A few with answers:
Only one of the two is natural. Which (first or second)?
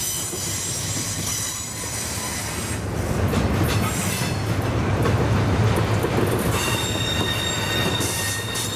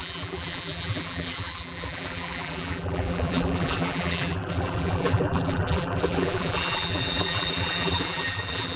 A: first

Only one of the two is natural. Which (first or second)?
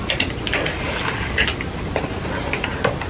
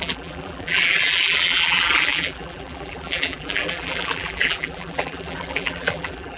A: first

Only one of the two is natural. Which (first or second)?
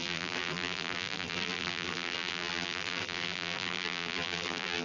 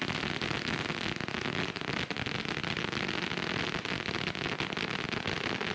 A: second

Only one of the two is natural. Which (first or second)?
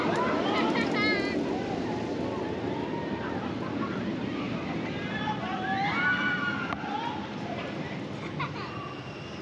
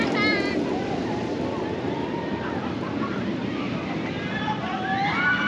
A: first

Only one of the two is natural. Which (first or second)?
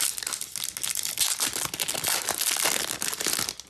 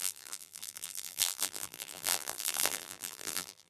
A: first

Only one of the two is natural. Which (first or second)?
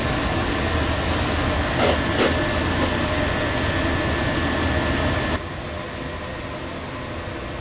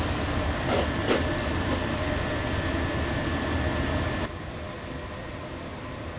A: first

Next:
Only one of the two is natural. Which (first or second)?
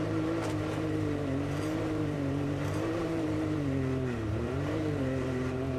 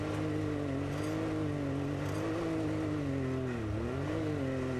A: second